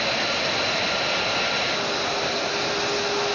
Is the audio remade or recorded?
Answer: recorded